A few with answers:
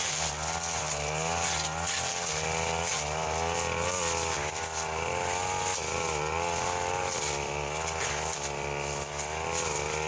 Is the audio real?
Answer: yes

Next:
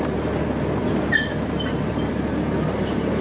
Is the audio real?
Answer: yes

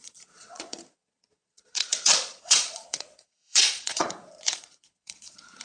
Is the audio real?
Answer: no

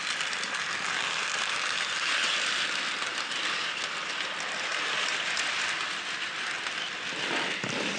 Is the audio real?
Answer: no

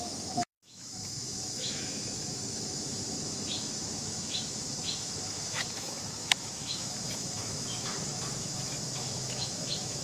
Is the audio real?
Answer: no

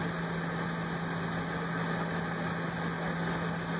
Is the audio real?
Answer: yes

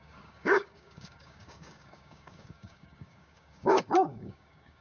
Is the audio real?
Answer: no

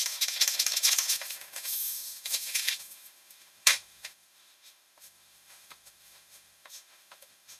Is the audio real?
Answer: no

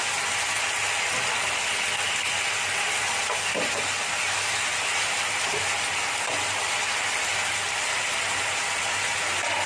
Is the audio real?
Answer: yes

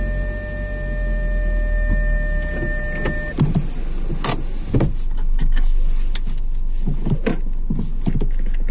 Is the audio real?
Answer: yes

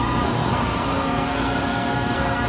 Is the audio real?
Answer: no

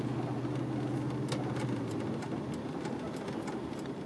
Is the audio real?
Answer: yes